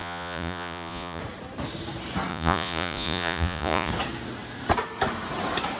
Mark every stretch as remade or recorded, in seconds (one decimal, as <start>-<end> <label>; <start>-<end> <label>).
0.0-1.2 remade; 1.2-2.3 recorded; 2.3-3.9 remade; 3.9-5.8 recorded